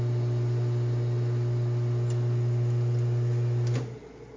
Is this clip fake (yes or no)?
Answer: no